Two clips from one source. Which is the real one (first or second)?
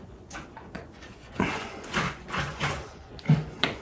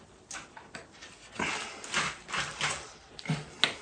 second